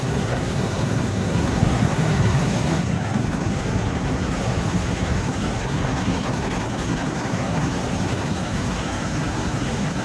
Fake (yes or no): yes